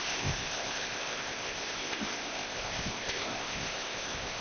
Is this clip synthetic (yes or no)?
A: yes